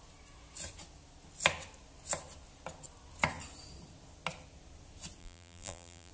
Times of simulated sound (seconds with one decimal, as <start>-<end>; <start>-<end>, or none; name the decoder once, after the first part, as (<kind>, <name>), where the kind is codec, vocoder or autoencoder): 5.2-6.1 (vocoder, BigVGAN v2)